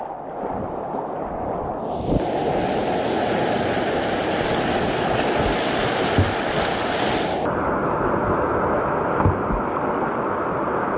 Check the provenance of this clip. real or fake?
real